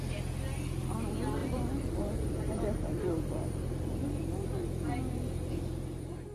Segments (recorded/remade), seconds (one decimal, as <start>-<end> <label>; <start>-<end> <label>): 0.0-1.4 recorded; 1.4-4.2 remade; 4.2-6.3 recorded